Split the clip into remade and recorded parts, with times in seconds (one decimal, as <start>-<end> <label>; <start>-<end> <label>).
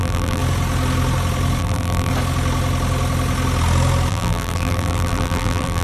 0.0-0.4 remade; 0.4-1.6 recorded; 1.6-2.1 remade; 2.1-4.1 recorded; 4.1-5.8 remade